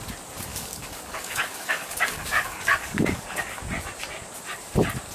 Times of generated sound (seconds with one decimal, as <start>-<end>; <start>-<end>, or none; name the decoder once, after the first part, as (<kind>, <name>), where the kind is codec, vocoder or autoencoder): 0.5-3.6 (codec, DAC)